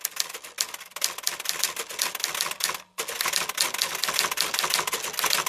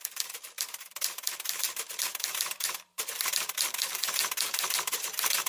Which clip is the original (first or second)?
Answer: first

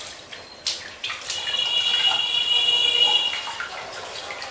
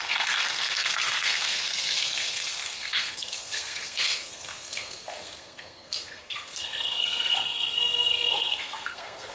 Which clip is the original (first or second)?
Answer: first